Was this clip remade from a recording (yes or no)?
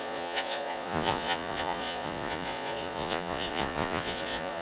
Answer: yes